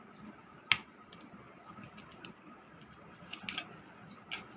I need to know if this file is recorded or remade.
recorded